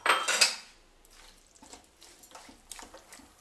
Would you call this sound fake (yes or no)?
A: no